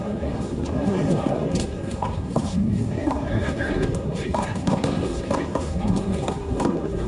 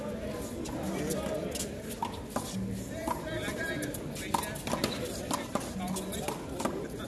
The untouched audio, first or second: second